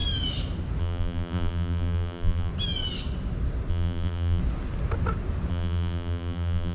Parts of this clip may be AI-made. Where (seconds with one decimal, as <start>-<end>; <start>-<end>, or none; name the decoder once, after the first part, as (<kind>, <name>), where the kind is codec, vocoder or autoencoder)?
0.8-2.5 (vocoder, BigVGAN v2); 3.7-4.4; 5.5-6.7